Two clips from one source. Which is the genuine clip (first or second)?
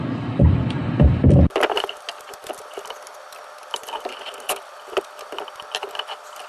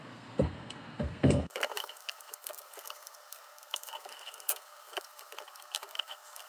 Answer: first